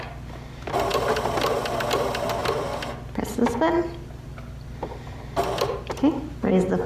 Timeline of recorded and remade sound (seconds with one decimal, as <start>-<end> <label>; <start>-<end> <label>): 0.0-6.9 recorded